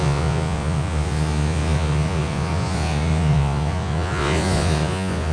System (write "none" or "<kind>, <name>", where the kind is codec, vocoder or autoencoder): vocoder, Vocos